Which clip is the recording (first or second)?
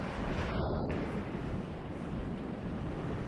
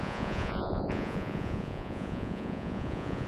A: first